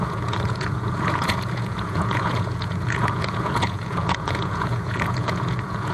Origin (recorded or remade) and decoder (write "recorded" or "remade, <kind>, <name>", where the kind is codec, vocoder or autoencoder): remade, vocoder, Vocos